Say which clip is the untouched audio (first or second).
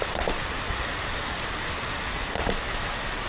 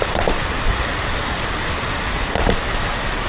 first